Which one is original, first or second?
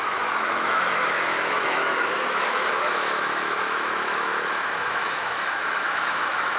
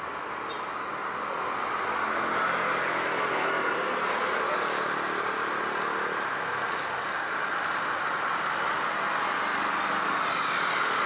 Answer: second